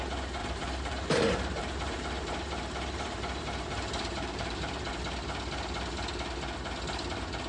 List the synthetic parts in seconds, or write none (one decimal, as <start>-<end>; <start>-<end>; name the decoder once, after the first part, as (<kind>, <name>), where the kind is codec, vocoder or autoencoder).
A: 0.4-4.9 (vocoder, BigVGAN v2)